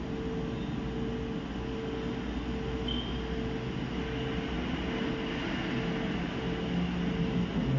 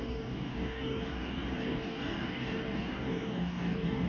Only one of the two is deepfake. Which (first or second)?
second